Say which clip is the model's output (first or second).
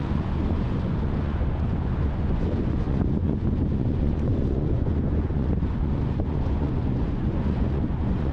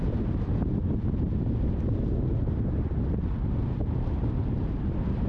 first